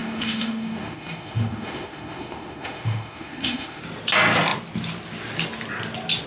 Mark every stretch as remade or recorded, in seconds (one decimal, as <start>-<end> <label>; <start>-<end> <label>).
0.0-3.8 remade; 3.8-6.3 recorded